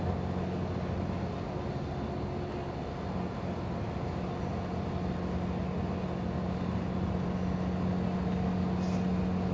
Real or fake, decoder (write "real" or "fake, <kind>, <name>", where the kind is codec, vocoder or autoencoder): real